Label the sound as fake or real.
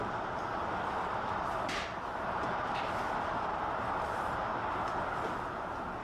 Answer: real